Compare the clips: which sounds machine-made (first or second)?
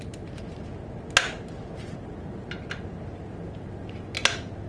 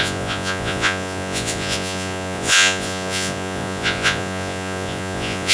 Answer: second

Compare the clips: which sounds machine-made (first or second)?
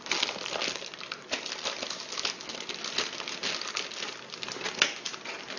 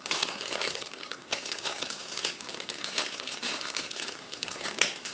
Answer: second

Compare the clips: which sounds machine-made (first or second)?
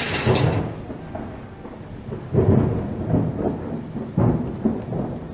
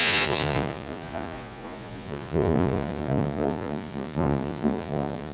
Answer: second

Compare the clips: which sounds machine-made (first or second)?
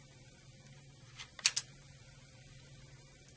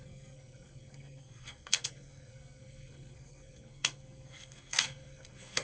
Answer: second